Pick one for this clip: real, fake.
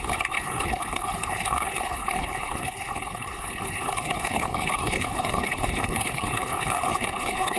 fake